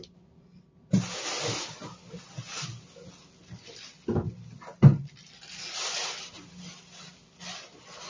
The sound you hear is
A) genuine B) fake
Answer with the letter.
A